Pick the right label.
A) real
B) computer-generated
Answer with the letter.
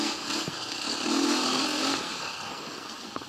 B